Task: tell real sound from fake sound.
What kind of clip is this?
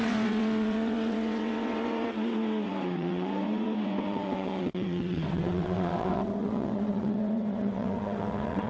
fake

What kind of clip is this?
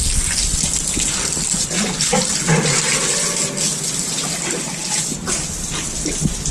real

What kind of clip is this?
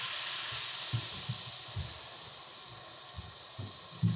real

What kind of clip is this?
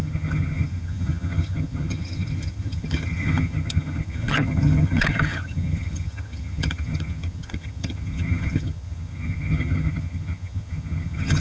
fake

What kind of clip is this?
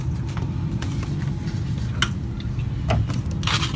real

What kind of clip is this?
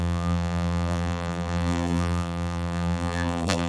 fake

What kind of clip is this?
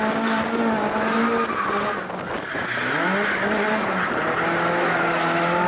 real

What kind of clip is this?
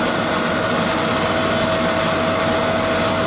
real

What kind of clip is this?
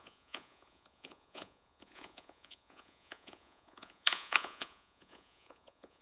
fake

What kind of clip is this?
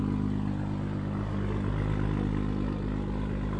real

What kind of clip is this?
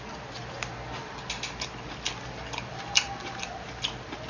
real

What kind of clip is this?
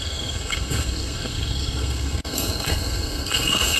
fake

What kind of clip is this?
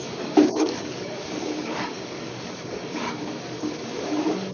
fake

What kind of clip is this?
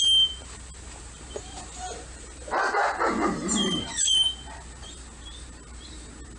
fake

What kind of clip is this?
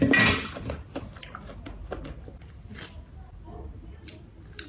real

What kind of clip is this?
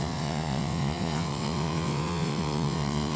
fake